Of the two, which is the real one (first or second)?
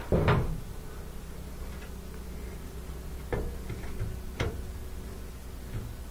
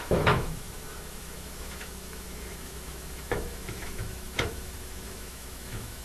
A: first